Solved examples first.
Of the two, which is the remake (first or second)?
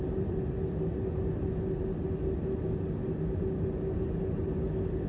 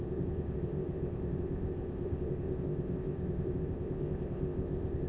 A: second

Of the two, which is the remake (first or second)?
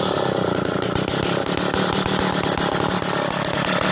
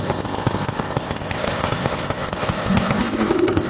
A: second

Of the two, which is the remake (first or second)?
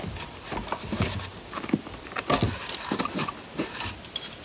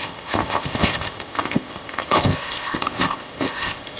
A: second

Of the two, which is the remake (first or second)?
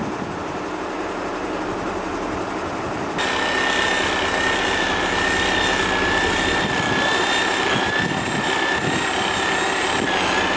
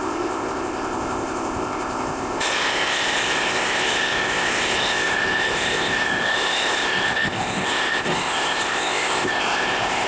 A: second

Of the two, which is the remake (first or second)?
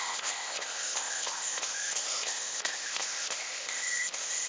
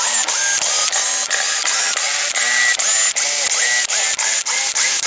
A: first